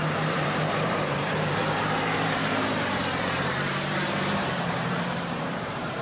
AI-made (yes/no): yes